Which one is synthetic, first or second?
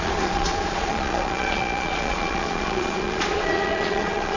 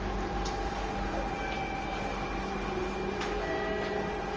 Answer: first